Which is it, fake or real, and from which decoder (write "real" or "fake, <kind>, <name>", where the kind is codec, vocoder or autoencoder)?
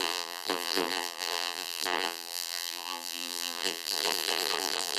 fake, vocoder, BigVGAN v2